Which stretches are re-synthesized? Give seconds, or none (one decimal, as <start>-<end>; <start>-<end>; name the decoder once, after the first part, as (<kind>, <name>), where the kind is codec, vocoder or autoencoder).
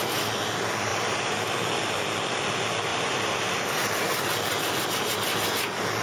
0.9-1.5 (vocoder, BigVGAN v2); 2.9-4.9